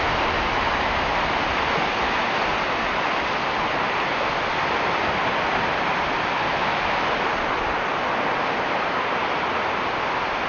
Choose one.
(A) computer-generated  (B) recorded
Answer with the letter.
B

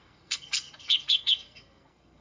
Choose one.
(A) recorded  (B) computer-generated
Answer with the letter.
B